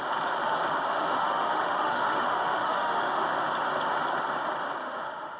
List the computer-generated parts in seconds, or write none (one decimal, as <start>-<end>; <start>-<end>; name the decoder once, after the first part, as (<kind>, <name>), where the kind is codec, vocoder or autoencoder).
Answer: 0.9-3.3 (autoencoder, DAC-VAE); 4.8-5.4